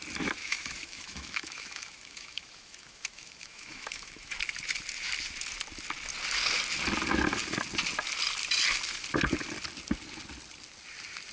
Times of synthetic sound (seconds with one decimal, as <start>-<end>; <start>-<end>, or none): 0.4-4.4